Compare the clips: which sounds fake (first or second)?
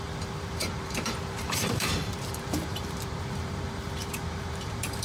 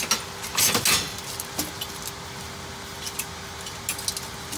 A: first